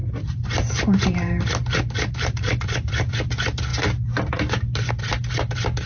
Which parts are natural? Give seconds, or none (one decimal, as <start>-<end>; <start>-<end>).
3.1-5.9